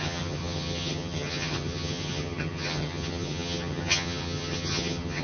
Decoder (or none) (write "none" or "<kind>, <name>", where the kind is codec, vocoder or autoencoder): vocoder, HiFi-GAN